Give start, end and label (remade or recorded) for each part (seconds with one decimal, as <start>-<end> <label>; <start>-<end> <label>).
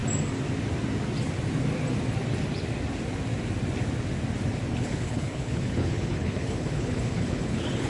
0.0-4.7 recorded; 4.7-7.9 remade